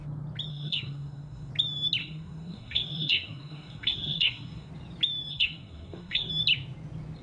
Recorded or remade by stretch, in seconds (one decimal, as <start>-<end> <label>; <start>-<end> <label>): 0.0-0.5 recorded; 0.5-1.5 remade; 1.5-2.0 recorded; 2.0-4.7 remade; 4.7-5.3 recorded; 5.3-6.3 remade; 6.3-7.2 recorded